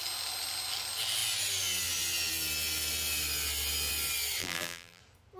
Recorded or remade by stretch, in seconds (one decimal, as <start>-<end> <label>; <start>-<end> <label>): 0.0-4.4 recorded; 4.4-5.0 remade; 5.0-5.4 recorded